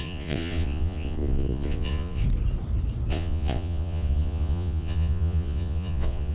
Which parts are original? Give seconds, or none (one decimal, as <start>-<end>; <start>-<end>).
2.2-3.1